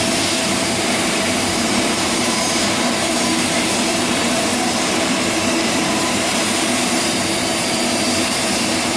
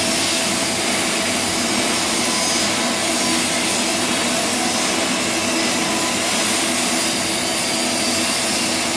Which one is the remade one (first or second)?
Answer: first